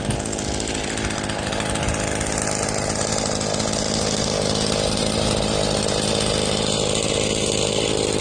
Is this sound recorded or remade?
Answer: recorded